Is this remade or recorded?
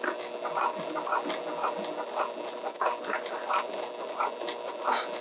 recorded